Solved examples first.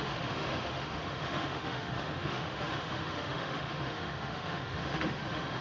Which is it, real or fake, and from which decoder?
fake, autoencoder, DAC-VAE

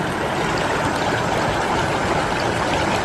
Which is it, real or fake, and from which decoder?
real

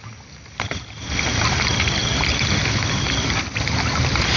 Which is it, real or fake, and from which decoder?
real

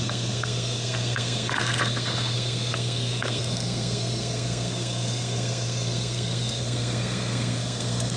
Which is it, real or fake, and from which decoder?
fake, codec, SNAC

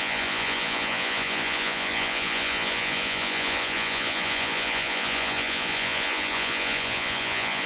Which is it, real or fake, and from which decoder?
fake, vocoder, Vocos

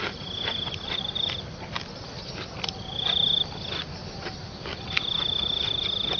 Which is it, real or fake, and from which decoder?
real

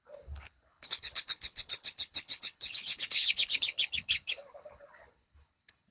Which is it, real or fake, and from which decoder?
fake, codec, HILCodec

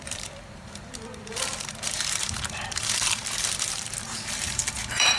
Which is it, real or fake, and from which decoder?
fake, vocoder, BigVGAN v2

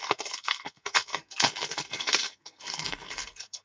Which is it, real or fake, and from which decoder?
fake, codec, SNAC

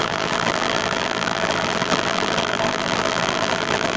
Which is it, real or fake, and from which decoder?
fake, vocoder, BigVGAN v2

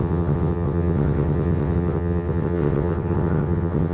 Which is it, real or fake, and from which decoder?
fake, vocoder, WaveNeXt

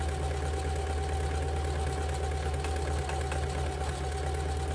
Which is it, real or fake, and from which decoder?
real